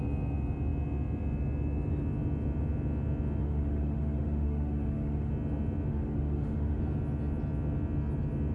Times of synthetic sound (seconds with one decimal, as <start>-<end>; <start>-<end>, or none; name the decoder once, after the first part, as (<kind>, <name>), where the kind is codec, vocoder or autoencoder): 3.4-5.3 (autoencoder, DAC-VAE); 5.9-6.8

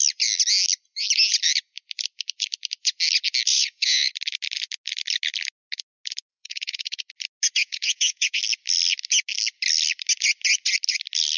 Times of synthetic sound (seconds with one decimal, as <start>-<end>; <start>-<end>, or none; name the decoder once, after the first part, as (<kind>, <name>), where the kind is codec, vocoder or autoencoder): 3.5-4.1 (vocoder, Vocos); 6.3-7.1; 7.6-8.4

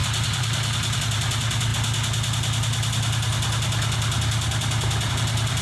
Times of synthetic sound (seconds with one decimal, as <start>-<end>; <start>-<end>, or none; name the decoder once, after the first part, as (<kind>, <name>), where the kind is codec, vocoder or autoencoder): 0.0-1.7 (vocoder, BigVGAN v2); 5.1-5.6

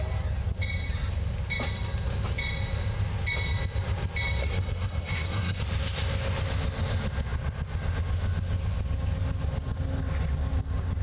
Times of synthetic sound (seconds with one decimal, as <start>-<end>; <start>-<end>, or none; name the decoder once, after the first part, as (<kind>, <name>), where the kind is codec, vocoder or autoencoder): 4.4-5.6 (codec, SNAC)

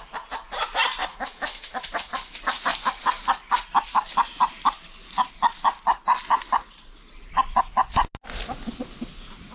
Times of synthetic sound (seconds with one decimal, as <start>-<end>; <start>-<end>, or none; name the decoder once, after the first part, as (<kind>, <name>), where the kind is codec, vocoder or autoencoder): 1.0-2.1 (autoencoder, DAC-VAE)

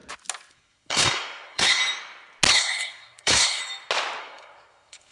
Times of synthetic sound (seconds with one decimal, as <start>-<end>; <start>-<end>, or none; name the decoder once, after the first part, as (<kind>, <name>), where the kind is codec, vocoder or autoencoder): 0.5-1.8 (codec, SNAC); 2.5-3.6; 4.2-5.1